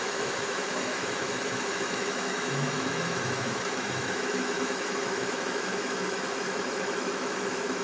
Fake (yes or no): yes